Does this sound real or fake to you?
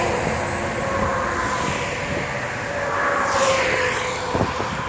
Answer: real